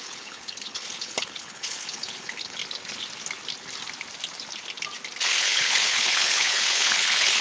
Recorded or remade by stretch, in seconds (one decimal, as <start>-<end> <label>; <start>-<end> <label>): 0.0-2.6 remade; 2.6-5.2 recorded; 5.2-7.4 remade